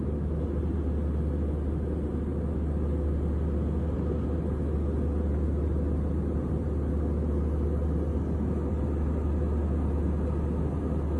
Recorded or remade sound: recorded